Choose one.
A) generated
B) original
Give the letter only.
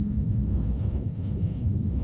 A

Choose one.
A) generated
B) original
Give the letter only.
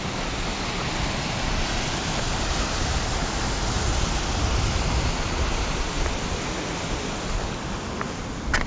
B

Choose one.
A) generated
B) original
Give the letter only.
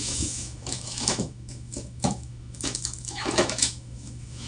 A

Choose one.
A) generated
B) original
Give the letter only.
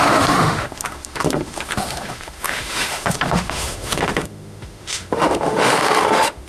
A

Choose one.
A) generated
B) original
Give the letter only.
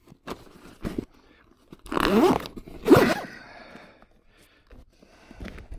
B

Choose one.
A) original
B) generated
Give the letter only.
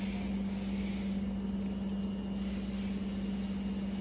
A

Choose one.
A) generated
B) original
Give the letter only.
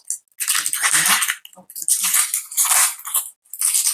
B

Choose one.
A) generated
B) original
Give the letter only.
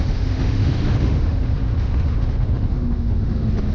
A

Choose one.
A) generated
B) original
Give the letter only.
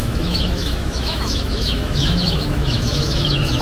A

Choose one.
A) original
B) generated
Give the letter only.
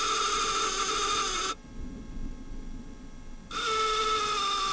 A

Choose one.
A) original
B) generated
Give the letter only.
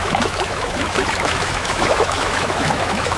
B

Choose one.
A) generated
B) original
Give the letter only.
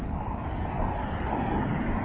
B